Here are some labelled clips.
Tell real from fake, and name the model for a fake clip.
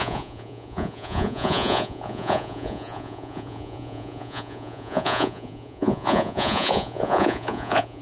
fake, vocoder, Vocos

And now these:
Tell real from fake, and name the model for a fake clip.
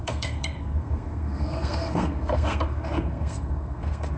fake, codec, SNAC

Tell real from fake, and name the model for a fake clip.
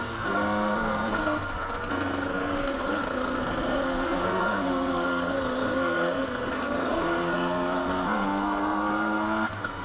fake, codec, SNAC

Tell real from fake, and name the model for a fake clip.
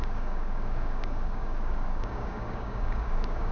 fake, codec, DAC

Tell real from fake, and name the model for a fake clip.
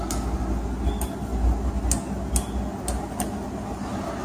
real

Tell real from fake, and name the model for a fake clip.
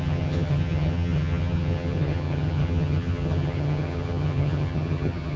fake, vocoder, HiFi-GAN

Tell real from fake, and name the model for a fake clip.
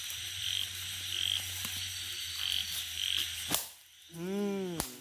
real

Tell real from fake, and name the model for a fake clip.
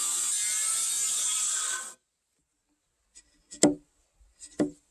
real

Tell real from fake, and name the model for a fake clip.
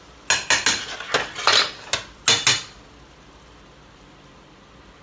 real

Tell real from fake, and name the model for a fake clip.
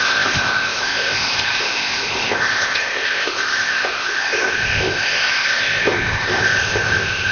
fake, codec, ZipCodec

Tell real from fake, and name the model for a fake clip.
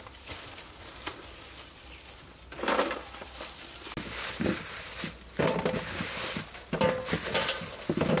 real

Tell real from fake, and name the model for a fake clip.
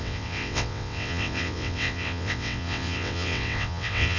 fake, vocoder, WaveNeXt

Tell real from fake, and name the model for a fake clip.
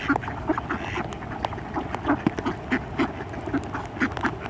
real